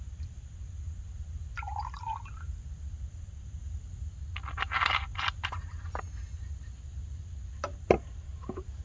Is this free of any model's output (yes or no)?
yes